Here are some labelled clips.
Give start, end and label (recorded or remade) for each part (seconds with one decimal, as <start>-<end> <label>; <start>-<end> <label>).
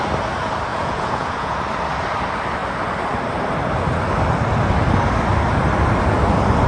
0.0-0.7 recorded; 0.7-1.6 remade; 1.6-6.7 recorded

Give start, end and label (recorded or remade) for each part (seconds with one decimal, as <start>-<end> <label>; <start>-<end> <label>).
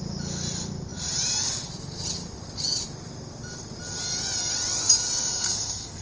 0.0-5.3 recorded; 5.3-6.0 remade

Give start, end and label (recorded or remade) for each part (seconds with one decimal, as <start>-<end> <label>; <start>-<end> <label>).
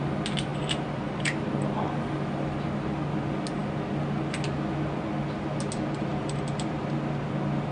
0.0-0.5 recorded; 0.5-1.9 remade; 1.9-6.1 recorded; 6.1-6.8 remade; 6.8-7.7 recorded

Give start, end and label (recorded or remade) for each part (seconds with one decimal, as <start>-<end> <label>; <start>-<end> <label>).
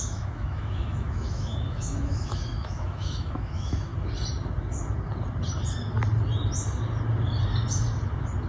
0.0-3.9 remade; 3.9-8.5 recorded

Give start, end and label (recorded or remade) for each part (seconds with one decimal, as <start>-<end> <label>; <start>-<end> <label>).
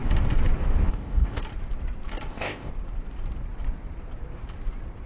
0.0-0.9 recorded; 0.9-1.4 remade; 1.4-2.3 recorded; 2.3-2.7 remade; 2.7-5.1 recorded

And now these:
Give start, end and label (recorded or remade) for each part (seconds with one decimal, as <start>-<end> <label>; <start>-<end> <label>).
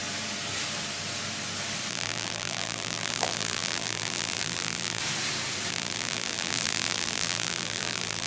0.0-1.9 recorded; 1.9-5.0 remade; 5.0-5.7 recorded; 5.7-8.3 remade